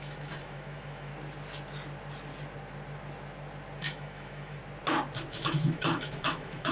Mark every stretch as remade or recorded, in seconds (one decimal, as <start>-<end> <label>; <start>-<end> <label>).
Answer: 0.0-1.1 remade; 1.1-3.8 recorded; 3.8-4.6 remade; 4.6-5.3 recorded; 5.3-6.7 remade